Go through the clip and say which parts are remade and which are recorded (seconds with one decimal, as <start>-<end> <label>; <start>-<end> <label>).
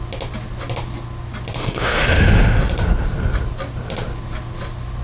0.0-1.6 recorded; 1.6-2.6 remade; 2.6-5.0 recorded